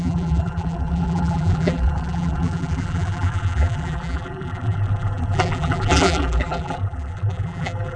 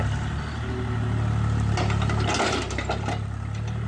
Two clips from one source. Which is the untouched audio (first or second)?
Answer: second